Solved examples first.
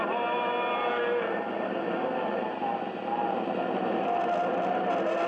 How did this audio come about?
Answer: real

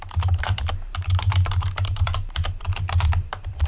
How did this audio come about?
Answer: fake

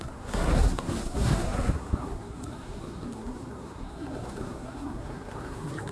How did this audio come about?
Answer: fake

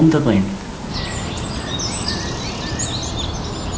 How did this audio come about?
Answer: real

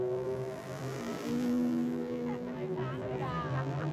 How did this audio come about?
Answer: fake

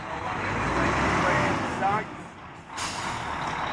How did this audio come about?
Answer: real